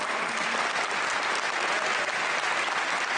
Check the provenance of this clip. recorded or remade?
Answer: recorded